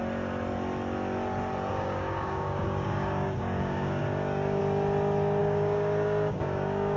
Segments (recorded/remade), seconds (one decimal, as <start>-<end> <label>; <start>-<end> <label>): 0.0-1.7 recorded; 1.7-4.6 remade; 4.6-5.4 recorded; 5.4-7.0 remade